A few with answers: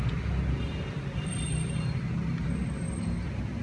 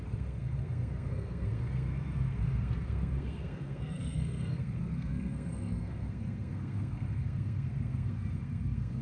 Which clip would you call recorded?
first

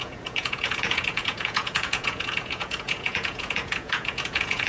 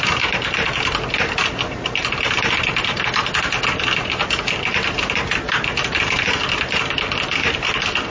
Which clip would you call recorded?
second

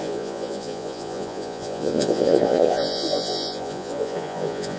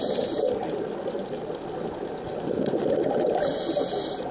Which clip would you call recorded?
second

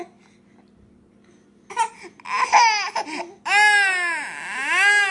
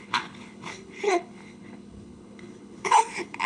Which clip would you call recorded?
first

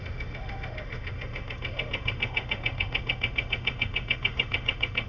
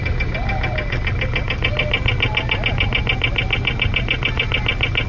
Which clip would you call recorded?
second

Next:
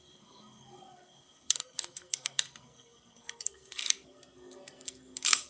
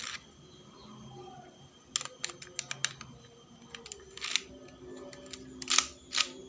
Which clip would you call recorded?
second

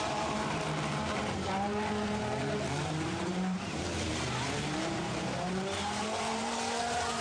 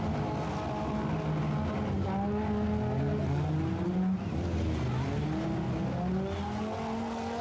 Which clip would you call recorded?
second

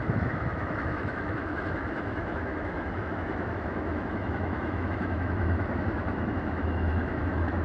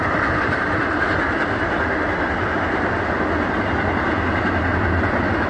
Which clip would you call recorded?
second